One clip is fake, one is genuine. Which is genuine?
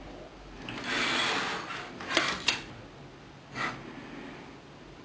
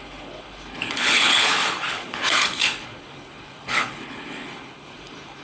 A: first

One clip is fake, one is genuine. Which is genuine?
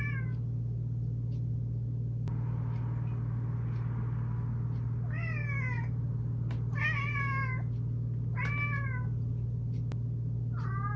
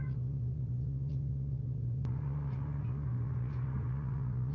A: first